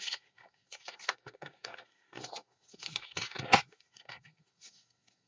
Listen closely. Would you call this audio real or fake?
fake